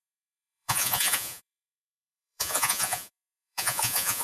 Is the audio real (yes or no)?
no